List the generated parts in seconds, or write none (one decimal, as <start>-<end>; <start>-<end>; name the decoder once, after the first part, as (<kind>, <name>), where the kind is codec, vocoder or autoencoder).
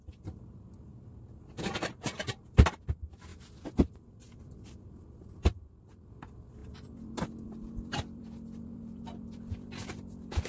0.0-0.9 (vocoder, BigVGAN v2); 1.4-3.3; 4.0-10.5